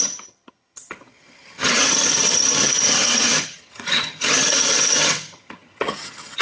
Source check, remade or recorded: remade